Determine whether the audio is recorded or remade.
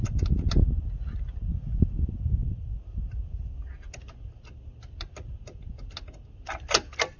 recorded